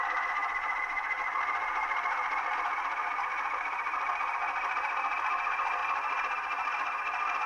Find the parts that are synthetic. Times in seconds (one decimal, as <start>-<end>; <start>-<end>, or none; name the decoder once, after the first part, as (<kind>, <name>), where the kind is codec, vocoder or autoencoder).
0.4-4.1 (vocoder, BigVGAN v2)